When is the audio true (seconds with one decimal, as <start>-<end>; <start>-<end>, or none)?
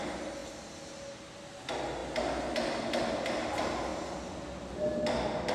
0.0-0.4; 0.9-5.5